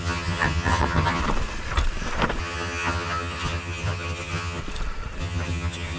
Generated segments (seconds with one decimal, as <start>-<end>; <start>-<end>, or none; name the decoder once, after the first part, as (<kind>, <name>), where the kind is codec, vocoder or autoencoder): 0.0-1.2 (vocoder, HiFi-GAN); 2.4-4.6; 5.2-6.0